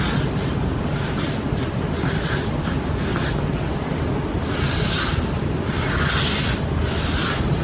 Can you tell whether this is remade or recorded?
recorded